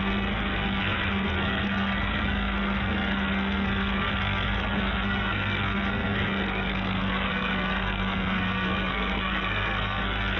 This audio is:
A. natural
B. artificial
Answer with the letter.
B